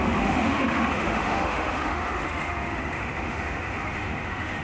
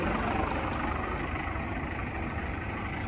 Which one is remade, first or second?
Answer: first